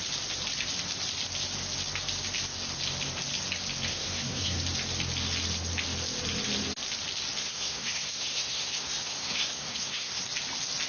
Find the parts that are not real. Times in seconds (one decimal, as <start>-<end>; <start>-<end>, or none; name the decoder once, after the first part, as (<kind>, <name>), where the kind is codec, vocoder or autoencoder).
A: 3.9-4.6 (codec, SNAC); 7.4-10.2